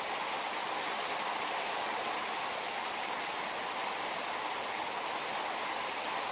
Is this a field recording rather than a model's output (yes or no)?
yes